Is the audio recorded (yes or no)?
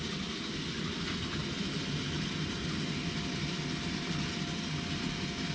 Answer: yes